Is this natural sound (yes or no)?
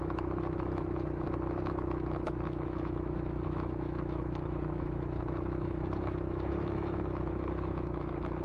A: no